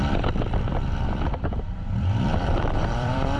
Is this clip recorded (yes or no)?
no